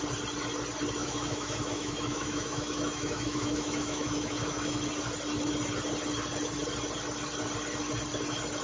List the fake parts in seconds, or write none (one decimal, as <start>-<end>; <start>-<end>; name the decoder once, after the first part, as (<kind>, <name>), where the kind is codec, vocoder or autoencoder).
1.0-4.8 (autoencoder, DAC-VAE)